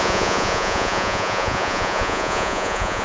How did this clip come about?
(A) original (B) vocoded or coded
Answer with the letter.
B